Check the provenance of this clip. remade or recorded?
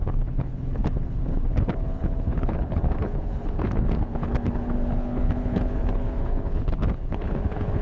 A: remade